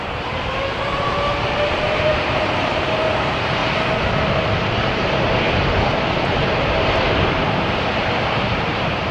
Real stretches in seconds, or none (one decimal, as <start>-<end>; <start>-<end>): 3.6-4.3